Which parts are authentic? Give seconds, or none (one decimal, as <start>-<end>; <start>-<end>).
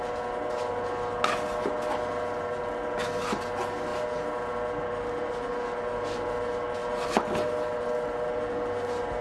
0.0-9.2